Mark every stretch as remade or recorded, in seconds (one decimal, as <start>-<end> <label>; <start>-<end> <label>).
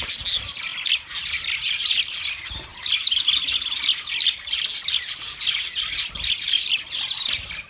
0.0-7.7 recorded